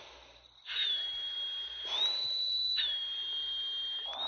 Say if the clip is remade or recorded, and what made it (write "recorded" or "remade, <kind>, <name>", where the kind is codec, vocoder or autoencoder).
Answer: recorded